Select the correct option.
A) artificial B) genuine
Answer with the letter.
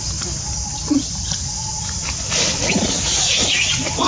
B